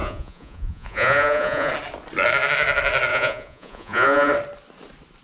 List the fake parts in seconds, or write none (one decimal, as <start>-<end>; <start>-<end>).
0.0-1.7; 3.1-4.3